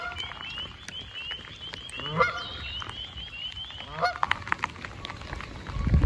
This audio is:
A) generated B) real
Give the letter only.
B